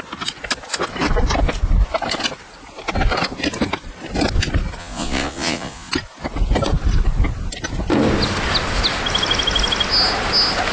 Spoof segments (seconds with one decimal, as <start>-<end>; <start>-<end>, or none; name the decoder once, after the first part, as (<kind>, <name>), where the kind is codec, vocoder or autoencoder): 4.8-5.9 (vocoder, Vocos)